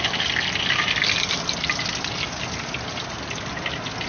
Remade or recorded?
recorded